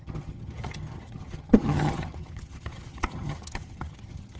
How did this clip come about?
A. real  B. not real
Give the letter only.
B